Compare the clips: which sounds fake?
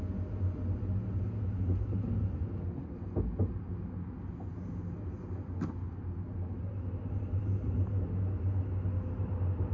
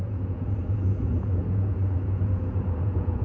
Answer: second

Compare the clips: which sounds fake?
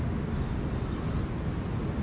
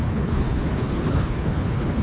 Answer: second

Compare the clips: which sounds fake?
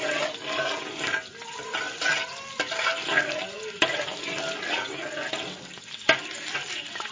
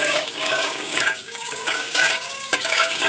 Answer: second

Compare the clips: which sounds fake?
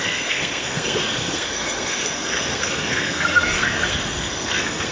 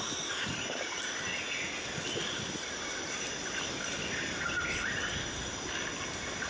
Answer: first